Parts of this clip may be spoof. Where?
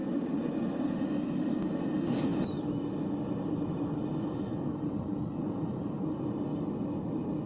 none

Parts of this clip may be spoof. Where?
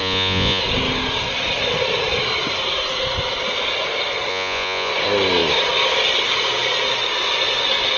0.0-0.6 (vocoder, Vocos); 4.3-4.9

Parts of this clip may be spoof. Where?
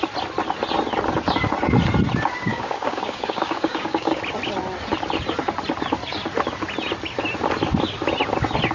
2.5-4.2 (codec, DAC)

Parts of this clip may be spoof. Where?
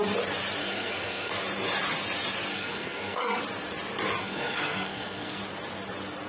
0.6-1.3 (codec, SNAC); 2.5-3.4; 4.2-5.4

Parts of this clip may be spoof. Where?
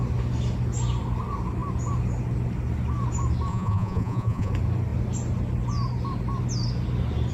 3.5-4.5 (vocoder, Vocos)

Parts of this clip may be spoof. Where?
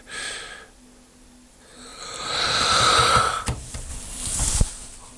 1.9-3.2 (vocoder, BigVGAN v2); 3.9-4.6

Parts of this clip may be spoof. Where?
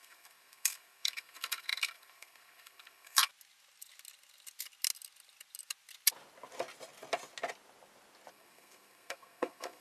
0.0-3.3 (codec, SNAC); 8.3-9.8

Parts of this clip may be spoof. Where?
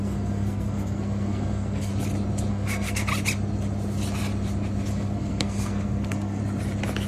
0.0-1.9 (codec, SNAC); 2.5-3.1; 4.9-6.4